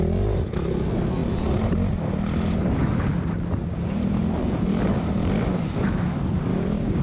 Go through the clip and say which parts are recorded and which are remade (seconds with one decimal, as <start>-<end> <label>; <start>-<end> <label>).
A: 0.0-6.5 recorded; 6.5-7.0 remade